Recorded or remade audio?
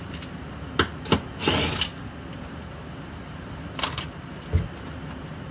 recorded